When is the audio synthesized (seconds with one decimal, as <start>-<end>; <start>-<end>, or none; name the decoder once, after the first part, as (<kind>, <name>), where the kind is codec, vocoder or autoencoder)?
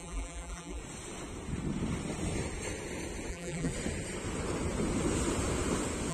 0.0-0.8 (vocoder, BigVGAN v2); 3.3-3.7